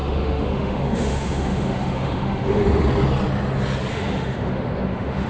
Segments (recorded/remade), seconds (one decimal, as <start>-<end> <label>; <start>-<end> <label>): 0.0-2.6 remade; 2.6-3.9 recorded; 3.9-5.3 remade

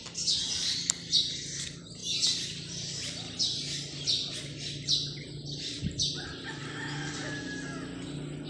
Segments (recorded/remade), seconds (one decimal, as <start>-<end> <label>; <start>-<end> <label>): 0.0-8.5 recorded

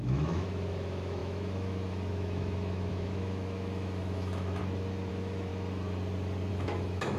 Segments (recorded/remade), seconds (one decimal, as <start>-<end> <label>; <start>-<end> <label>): 0.0-4.6 remade; 4.6-5.1 recorded; 5.1-5.5 remade; 5.5-6.5 recorded; 6.5-7.2 remade

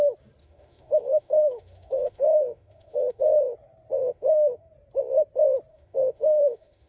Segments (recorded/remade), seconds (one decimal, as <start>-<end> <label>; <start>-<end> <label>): 0.0-0.4 recorded; 0.4-3.2 remade; 3.2-4.0 recorded; 4.0-4.7 remade; 4.7-5.7 recorded; 5.7-6.9 remade

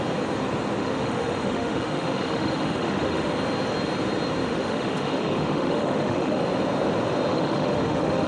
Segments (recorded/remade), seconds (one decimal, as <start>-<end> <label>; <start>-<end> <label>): 0.0-0.8 recorded; 0.8-3.3 remade; 3.3-4.4 recorded; 4.4-6.4 remade; 6.4-7.3 recorded; 7.3-8.3 remade

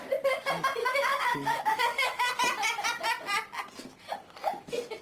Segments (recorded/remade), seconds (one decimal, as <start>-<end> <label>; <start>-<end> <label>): 0.0-0.8 recorded; 0.8-2.3 remade; 2.3-5.0 recorded